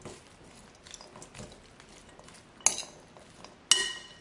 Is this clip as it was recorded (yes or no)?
yes